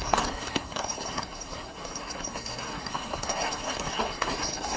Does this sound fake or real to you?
fake